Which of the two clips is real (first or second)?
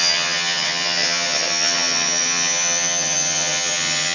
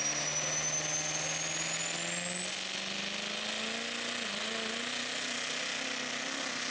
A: second